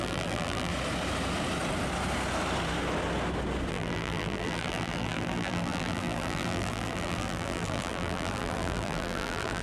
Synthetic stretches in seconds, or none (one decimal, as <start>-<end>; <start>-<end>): 0.0-0.7; 3.7-9.6